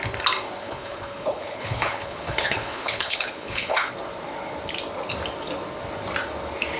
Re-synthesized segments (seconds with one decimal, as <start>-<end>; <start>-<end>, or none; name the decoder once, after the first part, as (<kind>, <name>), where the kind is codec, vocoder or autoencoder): 0.6-3.9 (codec, HILCodec)